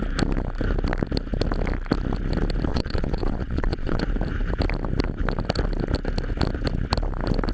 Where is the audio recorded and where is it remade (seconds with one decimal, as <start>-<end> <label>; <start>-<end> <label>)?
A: 0.0-2.7 recorded; 2.7-4.0 remade; 4.0-7.5 recorded